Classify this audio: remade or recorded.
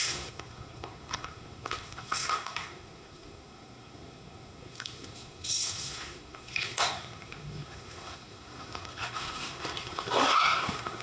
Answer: remade